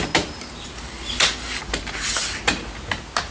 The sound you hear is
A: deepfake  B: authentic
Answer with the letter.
B